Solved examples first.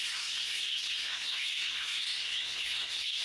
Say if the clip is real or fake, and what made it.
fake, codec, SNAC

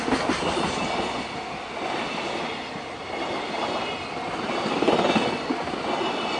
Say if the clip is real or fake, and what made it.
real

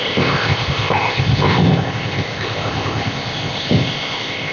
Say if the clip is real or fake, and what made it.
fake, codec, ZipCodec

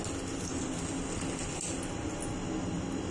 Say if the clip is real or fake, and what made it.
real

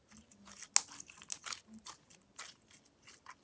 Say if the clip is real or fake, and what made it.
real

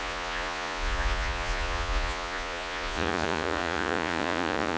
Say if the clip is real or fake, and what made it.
fake, vocoder, Vocos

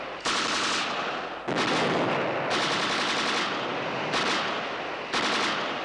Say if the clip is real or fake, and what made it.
real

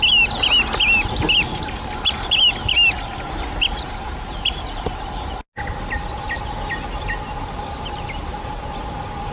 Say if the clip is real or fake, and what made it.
real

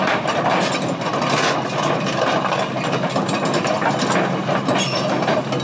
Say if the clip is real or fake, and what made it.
real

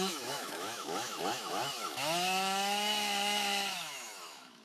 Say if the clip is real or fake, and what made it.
fake, autoencoder, DAC-VAE